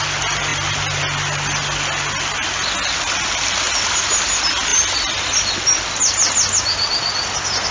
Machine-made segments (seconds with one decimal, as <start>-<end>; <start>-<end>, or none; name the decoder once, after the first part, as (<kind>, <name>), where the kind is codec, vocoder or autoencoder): none